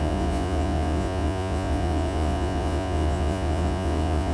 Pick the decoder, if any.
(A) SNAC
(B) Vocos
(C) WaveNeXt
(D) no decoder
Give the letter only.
B